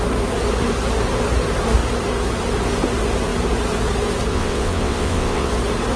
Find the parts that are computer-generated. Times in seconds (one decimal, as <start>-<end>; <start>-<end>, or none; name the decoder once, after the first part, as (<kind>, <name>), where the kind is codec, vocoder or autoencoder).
4.3-5.5 (vocoder, WaveNeXt)